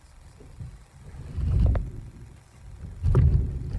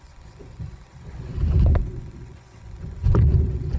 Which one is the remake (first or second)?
second